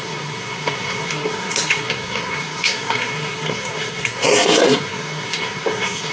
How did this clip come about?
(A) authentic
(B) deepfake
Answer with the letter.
B